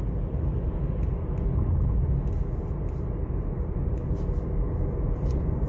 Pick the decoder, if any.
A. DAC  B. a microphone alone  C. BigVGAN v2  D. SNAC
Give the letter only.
B